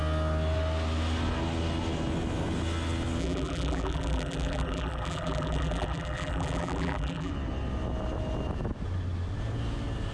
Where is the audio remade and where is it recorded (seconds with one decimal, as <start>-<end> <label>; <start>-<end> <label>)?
0.0-3.2 recorded; 3.2-7.3 remade; 7.3-10.1 recorded